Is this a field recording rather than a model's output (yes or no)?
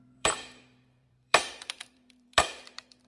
no